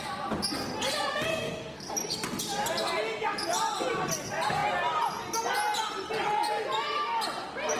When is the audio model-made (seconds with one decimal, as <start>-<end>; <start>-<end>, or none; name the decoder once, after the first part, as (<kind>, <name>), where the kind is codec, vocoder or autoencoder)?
1.3-1.9 (codec, SNAC)